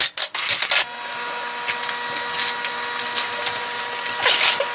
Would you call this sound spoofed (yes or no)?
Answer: no